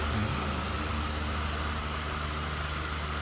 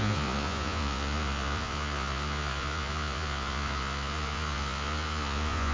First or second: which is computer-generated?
second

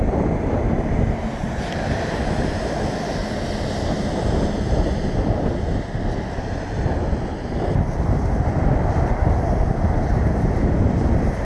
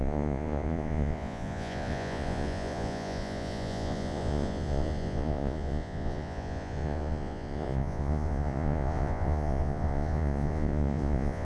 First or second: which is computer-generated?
second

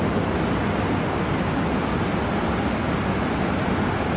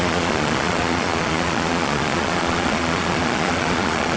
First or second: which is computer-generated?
second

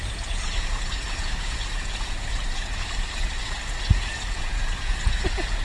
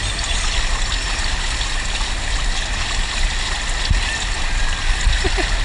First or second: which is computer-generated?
first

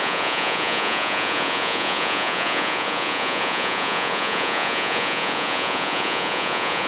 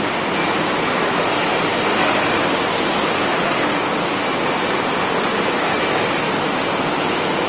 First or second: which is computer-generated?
first